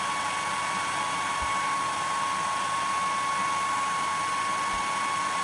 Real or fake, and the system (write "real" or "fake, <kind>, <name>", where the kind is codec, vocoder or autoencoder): real